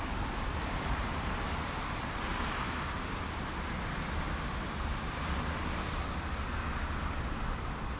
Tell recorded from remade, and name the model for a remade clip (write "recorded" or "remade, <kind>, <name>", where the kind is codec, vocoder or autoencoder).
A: recorded